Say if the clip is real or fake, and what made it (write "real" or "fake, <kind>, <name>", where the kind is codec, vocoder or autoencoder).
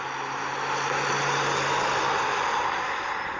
real